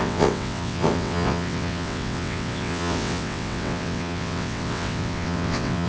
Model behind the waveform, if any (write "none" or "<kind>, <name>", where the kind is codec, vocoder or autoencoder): vocoder, WaveNeXt